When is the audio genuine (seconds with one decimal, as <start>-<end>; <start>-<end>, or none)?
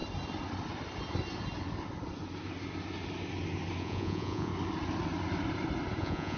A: 0.0-3.8; 4.5-6.0